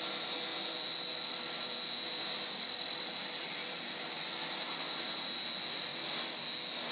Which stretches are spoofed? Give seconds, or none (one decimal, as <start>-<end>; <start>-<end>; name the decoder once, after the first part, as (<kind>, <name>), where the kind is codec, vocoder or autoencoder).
none